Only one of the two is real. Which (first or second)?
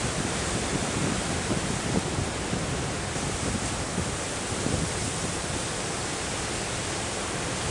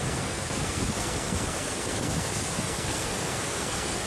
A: first